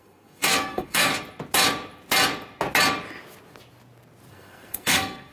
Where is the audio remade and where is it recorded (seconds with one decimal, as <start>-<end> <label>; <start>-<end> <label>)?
0.0-1.1 remade; 1.1-4.3 recorded; 4.3-5.3 remade